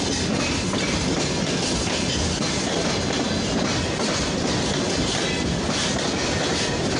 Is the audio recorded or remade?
recorded